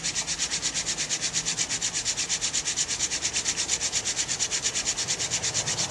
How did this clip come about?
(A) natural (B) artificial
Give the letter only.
A